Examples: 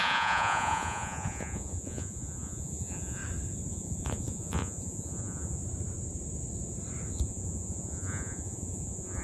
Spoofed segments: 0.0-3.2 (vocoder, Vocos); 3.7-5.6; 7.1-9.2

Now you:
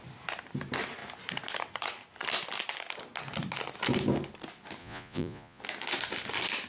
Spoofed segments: 4.8-5.6 (vocoder, Vocos)